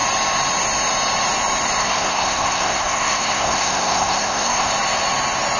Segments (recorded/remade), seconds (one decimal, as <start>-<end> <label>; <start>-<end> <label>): 0.0-1.8 recorded; 1.8-4.7 remade; 4.7-5.6 recorded